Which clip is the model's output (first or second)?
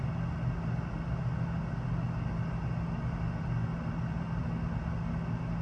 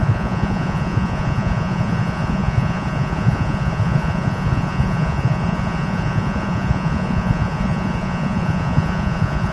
second